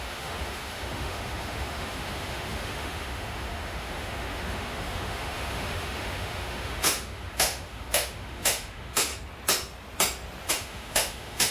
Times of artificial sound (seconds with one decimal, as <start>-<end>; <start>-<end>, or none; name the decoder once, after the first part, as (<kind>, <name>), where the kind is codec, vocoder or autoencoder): 0.0-9.1 (autoencoder, DAC-VAE); 10.5-11.5